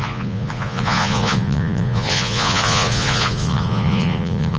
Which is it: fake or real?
fake